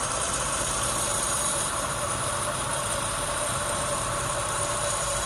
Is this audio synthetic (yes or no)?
yes